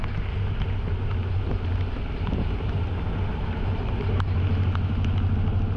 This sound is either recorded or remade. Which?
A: recorded